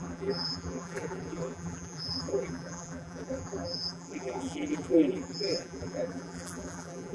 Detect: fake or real fake